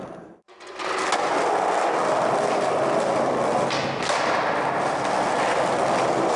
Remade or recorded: recorded